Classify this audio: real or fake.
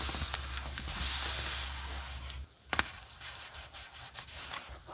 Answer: real